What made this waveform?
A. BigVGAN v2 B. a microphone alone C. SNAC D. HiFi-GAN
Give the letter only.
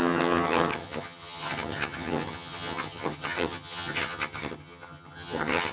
D